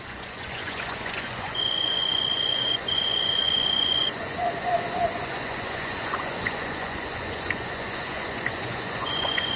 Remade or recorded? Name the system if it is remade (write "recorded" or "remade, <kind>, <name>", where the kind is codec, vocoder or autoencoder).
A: remade, vocoder, Vocos